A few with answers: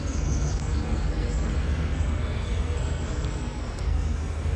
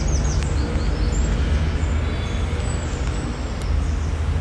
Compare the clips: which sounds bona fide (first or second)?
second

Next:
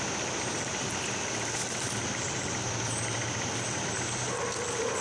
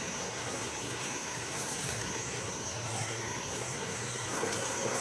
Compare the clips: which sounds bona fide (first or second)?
first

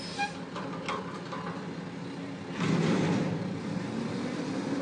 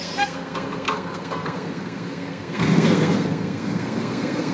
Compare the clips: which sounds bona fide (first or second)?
first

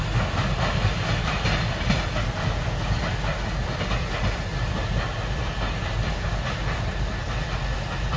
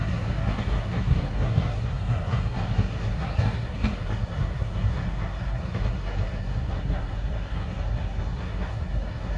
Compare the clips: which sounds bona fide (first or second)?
first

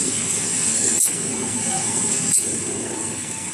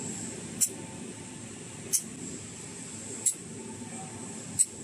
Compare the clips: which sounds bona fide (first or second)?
second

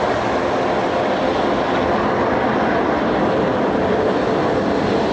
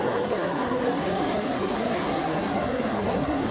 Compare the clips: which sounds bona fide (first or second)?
first